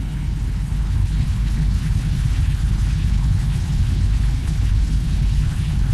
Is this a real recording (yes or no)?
no